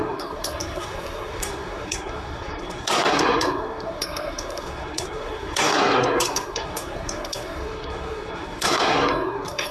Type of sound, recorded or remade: remade